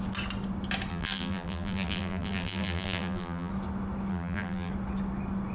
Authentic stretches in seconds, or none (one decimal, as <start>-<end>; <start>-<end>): 0.0-0.9; 3.5-4.1; 4.7-5.5